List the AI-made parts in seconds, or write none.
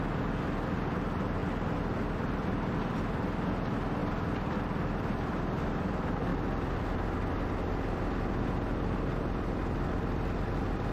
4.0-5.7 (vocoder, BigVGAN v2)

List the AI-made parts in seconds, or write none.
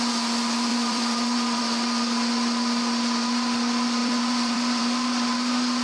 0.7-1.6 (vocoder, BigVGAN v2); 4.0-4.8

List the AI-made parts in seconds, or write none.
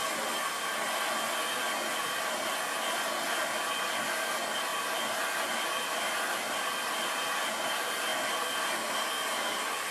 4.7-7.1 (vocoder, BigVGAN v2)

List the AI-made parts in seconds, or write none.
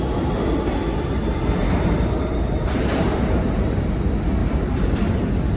1.6-3.9 (vocoder, BigVGAN v2); 4.4-5.1